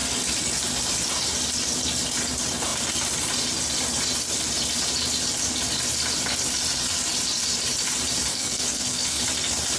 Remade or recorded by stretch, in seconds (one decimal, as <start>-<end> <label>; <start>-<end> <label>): 0.0-8.3 recorded; 8.3-9.2 remade; 9.2-9.8 recorded

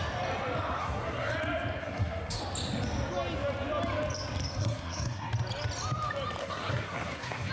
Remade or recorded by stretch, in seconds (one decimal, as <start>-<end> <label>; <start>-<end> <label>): 0.0-0.8 recorded; 0.8-1.3 remade; 1.3-1.8 recorded; 1.8-2.4 remade; 2.4-4.6 recorded; 4.6-5.3 remade; 5.3-6.4 recorded; 6.4-7.5 remade